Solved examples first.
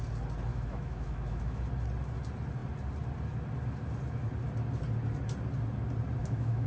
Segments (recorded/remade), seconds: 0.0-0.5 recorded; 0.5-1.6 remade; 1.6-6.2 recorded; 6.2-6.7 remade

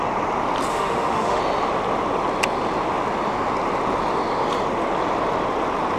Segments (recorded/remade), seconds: 0.0-0.7 recorded; 0.7-1.4 remade; 1.4-6.0 recorded

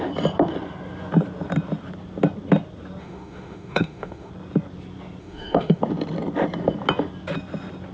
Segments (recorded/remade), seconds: 0.0-3.0 recorded; 3.0-4.3 remade; 4.3-5.2 recorded; 5.2-5.8 remade; 5.8-7.9 recorded

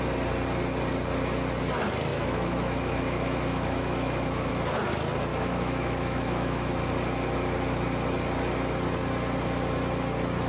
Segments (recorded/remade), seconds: 0.0-2.1 recorded; 2.1-4.5 remade; 4.5-5.3 recorded; 5.3-6.8 remade; 6.8-10.5 recorded

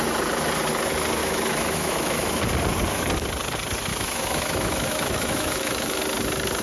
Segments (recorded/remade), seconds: 0.0-1.2 recorded; 1.2-2.4 remade; 2.4-3.9 recorded; 3.9-6.0 remade; 6.0-6.6 recorded

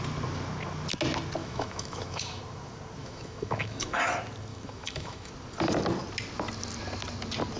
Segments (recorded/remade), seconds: 0.0-1.4 recorded; 1.4-2.4 remade; 2.4-3.0 recorded; 3.0-4.0 remade; 4.0-4.5 recorded; 4.5-5.3 remade; 5.3-7.6 recorded

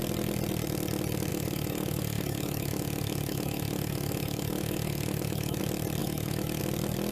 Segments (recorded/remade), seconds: 0.0-1.3 recorded; 1.3-5.6 remade; 5.6-6.0 recorded; 6.0-6.6 remade; 6.6-7.1 recorded

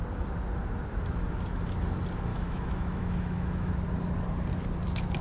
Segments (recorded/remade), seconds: 0.0-2.3 recorded; 2.3-3.7 remade; 3.7-5.2 recorded